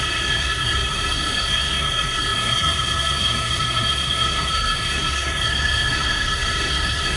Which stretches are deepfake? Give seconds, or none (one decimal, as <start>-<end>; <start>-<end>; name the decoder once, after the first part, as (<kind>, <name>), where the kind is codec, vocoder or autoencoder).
0.0-7.2 (codec, SNAC)

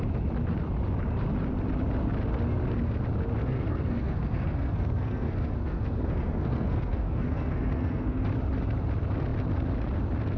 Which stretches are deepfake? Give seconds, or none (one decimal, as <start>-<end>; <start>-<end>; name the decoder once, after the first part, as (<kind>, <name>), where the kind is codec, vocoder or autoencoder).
3.4-8.2 (codec, SNAC)

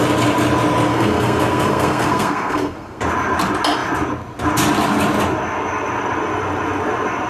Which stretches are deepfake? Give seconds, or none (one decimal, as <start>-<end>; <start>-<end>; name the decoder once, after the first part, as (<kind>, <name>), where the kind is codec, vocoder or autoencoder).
0.9-3.0 (codec, SNAC)

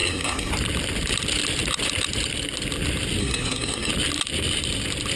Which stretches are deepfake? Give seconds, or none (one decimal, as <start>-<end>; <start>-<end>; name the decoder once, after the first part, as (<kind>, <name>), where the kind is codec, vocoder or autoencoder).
0.0-0.5 (codec, SNAC); 3.2-3.9